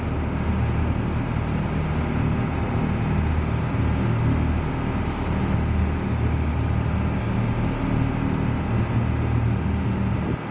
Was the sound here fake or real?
real